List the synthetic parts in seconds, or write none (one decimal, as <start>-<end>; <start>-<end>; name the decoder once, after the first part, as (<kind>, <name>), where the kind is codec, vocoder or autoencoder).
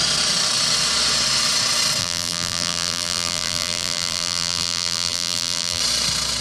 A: 2.0-5.8 (vocoder, BigVGAN v2)